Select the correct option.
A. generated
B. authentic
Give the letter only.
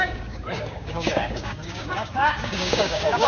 A